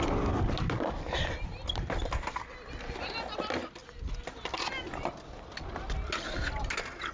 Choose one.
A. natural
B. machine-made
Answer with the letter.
A